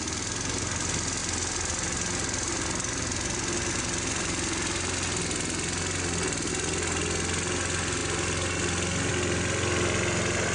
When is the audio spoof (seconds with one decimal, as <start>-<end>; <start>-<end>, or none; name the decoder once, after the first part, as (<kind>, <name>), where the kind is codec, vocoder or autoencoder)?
none

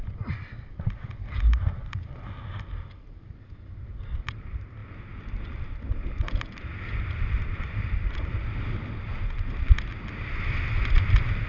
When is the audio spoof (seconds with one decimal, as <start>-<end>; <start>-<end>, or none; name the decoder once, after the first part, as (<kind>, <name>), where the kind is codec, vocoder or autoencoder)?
none

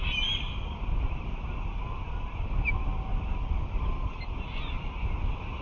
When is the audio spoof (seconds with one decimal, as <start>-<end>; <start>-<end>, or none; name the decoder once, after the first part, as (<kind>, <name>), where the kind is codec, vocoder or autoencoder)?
none